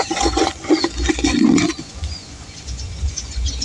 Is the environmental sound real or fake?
fake